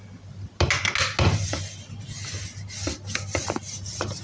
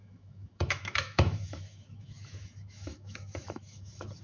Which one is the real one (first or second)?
first